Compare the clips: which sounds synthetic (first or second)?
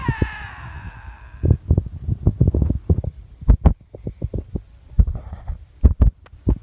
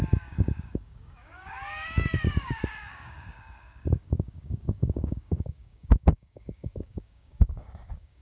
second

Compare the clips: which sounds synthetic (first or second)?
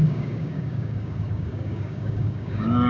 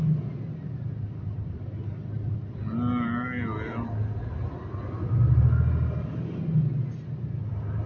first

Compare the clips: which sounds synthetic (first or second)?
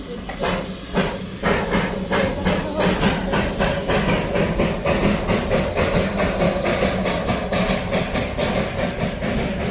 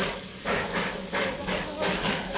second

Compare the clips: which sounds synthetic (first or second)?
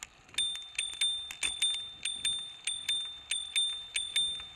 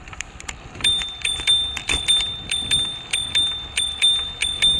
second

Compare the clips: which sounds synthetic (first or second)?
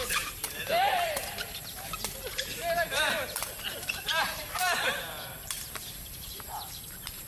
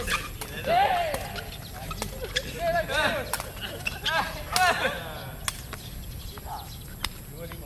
first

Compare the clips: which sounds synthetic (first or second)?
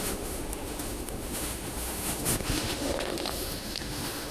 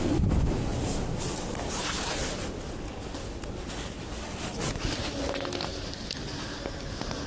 first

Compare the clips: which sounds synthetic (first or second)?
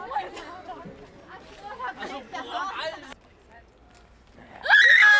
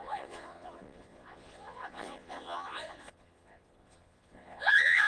second